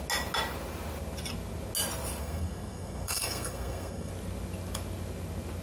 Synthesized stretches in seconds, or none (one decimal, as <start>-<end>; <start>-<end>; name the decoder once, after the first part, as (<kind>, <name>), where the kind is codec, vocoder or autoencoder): 2.2-4.1 (codec, SNAC)